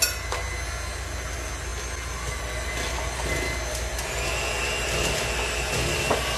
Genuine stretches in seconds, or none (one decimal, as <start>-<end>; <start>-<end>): 0.0-6.4